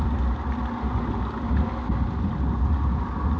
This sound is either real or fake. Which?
real